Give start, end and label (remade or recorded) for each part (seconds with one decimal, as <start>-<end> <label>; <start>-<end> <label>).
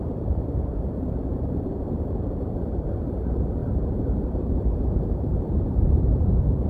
0.0-6.7 remade